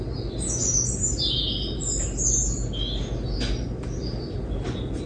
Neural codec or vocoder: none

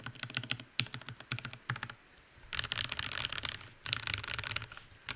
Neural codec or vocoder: none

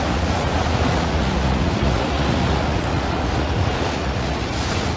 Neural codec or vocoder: vocoder, Vocos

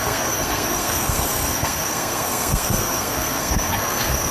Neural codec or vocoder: codec, SNAC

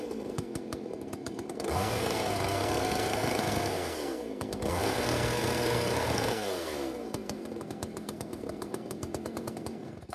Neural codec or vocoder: codec, SNAC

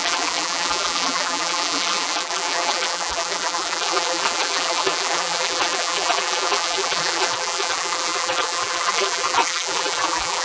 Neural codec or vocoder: vocoder, BigVGAN v2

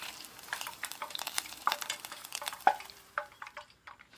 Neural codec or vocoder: vocoder, BigVGAN v2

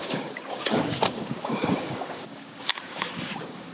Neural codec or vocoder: codec, DAC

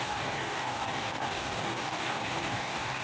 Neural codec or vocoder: codec, DAC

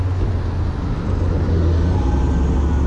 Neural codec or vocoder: none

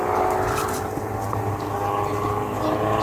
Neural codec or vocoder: none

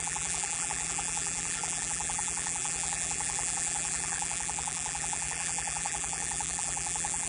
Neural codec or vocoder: vocoder, BigVGAN v2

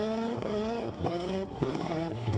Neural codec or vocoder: codec, SNAC